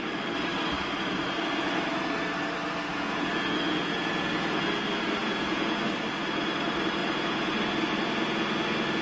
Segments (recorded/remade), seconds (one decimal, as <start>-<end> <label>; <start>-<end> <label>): 0.0-2.9 recorded; 2.9-4.6 remade; 4.6-5.2 recorded; 5.2-5.8 remade; 5.8-7.0 recorded; 7.0-7.5 remade; 7.5-9.0 recorded